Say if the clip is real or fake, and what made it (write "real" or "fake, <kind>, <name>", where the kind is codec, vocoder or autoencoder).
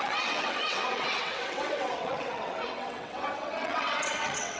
fake, vocoder, WaveNeXt